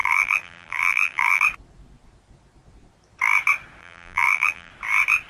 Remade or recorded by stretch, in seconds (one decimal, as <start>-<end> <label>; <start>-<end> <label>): 0.0-1.4 remade; 1.4-3.8 recorded; 3.8-4.7 remade; 4.7-5.3 recorded